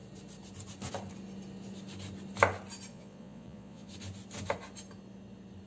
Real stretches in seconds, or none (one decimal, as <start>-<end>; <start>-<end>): 0.0-2.9; 3.9-5.7